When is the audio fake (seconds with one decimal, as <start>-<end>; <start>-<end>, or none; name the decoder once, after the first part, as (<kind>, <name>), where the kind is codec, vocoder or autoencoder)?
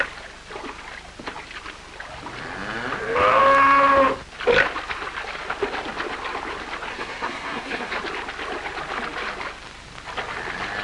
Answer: 6.9-7.9 (codec, SNAC)